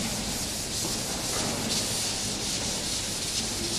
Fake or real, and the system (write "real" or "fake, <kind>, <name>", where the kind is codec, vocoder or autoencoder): real